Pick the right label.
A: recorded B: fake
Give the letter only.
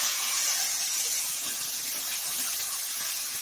B